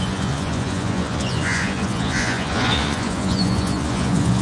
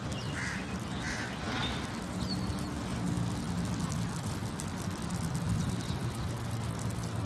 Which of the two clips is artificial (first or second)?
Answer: first